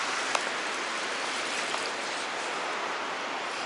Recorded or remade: recorded